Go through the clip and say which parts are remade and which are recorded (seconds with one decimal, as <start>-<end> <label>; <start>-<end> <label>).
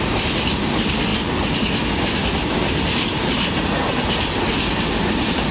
0.0-1.1 remade; 1.1-4.4 recorded; 4.4-5.5 remade